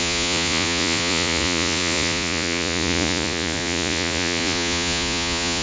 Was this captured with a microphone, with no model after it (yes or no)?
no